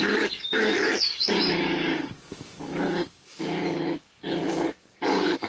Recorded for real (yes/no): no